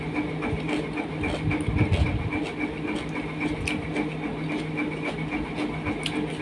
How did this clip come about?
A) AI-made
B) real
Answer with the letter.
B